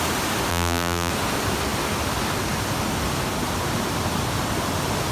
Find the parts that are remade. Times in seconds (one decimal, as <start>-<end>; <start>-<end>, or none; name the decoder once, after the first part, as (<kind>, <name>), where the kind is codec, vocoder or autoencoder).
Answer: 0.5-1.1 (vocoder, BigVGAN v2)